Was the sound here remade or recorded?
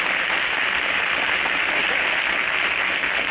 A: recorded